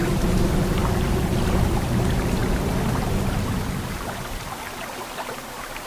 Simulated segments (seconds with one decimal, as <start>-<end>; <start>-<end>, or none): none